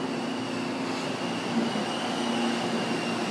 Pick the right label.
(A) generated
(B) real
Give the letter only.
B